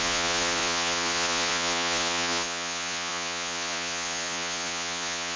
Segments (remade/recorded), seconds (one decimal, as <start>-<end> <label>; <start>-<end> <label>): 0.0-5.4 remade